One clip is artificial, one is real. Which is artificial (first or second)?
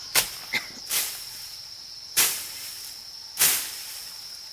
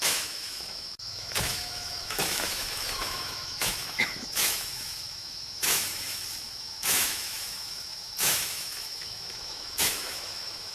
second